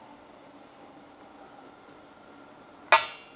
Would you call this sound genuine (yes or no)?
yes